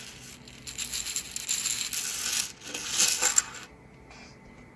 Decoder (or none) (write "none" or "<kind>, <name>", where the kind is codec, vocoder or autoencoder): none